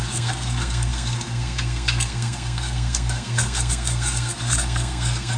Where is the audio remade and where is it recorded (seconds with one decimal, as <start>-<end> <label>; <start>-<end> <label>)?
0.0-5.4 remade